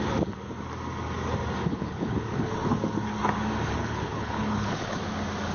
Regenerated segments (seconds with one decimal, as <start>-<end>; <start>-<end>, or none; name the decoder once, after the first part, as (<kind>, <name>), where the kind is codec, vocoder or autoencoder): 1.6-2.5 (codec, HILCodec); 3.8-5.0